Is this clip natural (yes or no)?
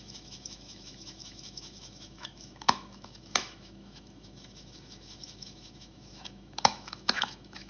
no